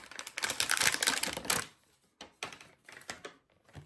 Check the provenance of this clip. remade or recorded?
recorded